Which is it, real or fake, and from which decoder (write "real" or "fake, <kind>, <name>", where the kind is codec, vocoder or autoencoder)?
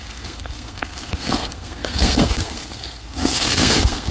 fake, codec, SNAC